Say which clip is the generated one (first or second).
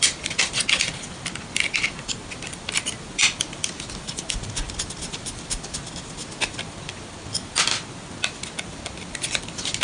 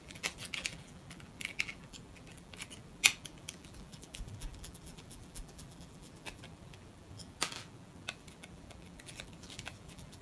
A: second